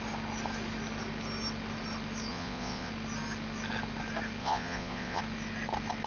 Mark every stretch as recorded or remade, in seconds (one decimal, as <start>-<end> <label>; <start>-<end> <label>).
0.0-2.3 recorded; 2.3-2.9 remade; 2.9-4.4 recorded; 4.4-5.2 remade; 5.2-6.1 recorded